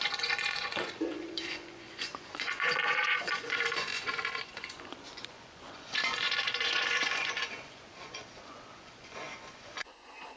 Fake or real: fake